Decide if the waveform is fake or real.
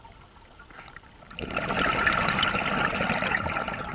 real